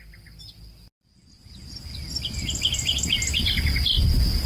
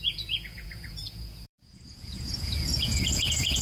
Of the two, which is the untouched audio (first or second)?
first